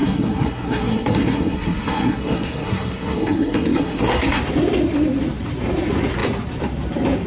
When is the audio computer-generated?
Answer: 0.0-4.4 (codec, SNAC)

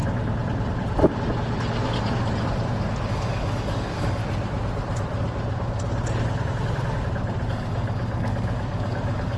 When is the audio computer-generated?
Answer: 3.1-4.2 (codec, DAC); 7.5-9.4

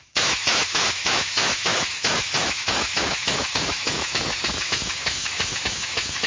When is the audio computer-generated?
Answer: 0.0-6.3 (autoencoder, DAC-VAE)

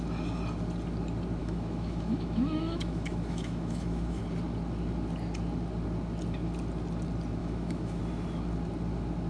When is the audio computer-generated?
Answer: 1.4-4.2 (autoencoder, DAC-VAE); 7.4-8.0